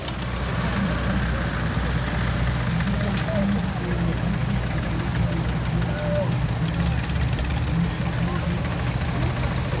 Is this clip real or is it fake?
real